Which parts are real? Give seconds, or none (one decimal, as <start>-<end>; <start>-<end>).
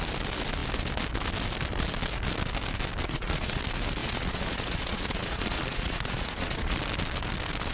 0.0-3.0; 3.6-4.0; 6.8-7.7